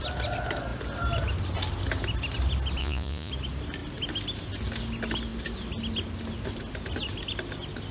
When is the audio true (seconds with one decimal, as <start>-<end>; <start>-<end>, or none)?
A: 0.0-2.8; 3.3-7.9

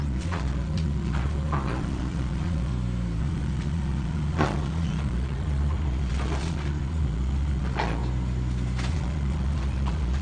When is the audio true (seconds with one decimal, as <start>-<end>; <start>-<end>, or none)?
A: 2.7-3.2; 8.0-8.9

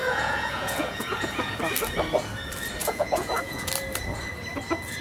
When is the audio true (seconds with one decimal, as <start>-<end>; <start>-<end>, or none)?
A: 1.5-2.8; 3.7-5.0

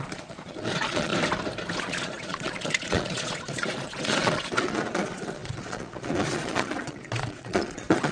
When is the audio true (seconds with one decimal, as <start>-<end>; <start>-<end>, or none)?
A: 1.1-1.8

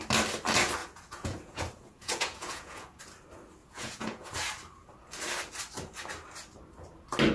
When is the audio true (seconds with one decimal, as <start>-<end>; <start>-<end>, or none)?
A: 0.0-0.8; 3.0-3.6; 4.3-7.3

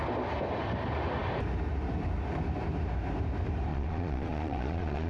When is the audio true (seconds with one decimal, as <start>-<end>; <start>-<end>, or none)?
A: 0.0-3.7

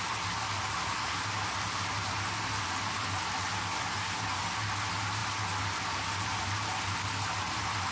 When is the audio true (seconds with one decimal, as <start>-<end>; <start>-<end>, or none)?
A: 0.0-7.9

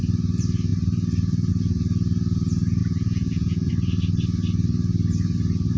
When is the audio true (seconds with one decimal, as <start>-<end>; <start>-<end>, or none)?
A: 0.0-2.8; 3.7-5.8